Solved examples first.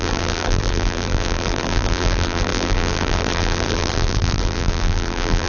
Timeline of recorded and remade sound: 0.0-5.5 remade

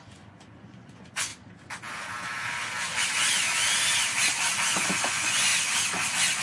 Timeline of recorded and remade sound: 0.0-1.3 remade; 1.3-5.1 recorded; 5.1-5.5 remade; 5.5-6.4 recorded

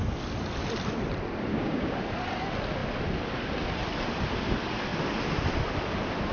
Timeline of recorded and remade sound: 0.0-1.5 recorded; 1.5-2.0 remade; 2.0-6.3 recorded